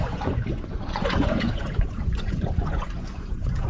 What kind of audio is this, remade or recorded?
remade